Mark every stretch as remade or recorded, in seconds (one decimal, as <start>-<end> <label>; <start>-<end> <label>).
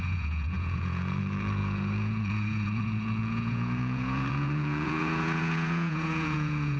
0.0-6.8 remade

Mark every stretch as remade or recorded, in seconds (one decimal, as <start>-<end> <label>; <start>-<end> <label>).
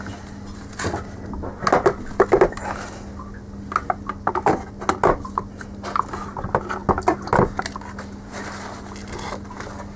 0.0-10.0 recorded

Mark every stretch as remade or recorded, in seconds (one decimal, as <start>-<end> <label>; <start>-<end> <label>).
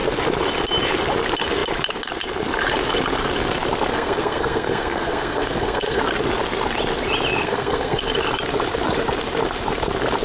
0.0-3.9 recorded; 3.9-6.0 remade; 6.0-7.4 recorded; 7.4-8.0 remade; 8.0-10.2 recorded